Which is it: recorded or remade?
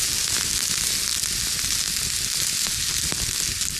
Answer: recorded